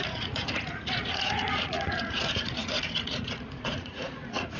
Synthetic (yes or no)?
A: yes